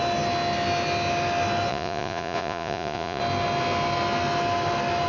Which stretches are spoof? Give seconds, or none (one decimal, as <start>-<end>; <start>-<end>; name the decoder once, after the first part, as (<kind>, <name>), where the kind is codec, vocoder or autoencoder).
1.7-3.2 (vocoder, Vocos)